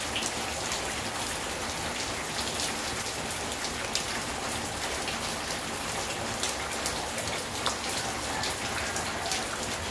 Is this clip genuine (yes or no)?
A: yes